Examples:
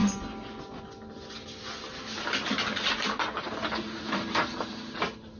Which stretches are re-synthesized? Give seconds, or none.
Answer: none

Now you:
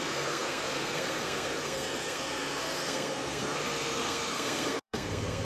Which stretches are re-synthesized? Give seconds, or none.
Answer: 0.0-5.4 (codec, SNAC)